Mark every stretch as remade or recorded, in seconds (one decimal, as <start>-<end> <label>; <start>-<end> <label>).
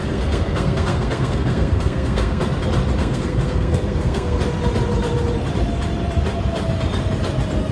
0.0-2.4 remade; 2.4-3.0 recorded; 3.0-4.4 remade; 4.4-7.7 recorded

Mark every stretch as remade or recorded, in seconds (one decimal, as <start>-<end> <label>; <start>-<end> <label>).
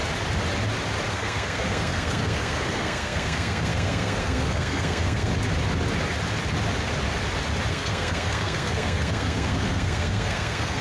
0.0-1.1 recorded; 1.1-5.3 remade; 5.3-7.7 recorded; 7.7-10.8 remade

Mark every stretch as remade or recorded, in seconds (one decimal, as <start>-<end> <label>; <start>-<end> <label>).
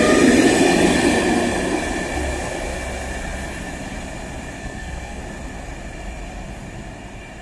0.0-4.6 recorded; 4.6-5.2 remade; 5.2-7.4 recorded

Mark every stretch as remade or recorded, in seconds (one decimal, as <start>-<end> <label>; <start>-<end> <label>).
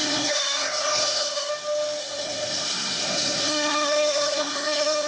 0.0-1.5 remade; 1.5-2.0 recorded; 2.0-5.1 remade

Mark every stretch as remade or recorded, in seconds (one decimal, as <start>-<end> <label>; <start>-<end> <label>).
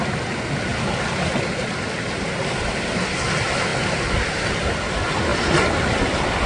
0.0-6.5 recorded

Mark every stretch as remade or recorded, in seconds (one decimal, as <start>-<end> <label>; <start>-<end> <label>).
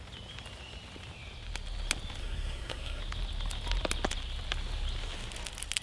0.0-2.2 recorded; 2.2-3.0 remade; 3.0-5.8 recorded